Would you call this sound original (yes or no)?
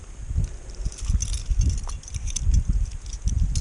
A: yes